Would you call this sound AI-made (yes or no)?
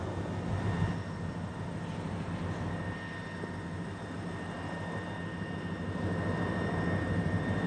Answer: no